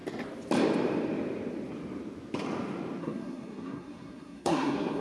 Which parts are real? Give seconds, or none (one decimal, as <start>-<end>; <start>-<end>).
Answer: 0.0-3.0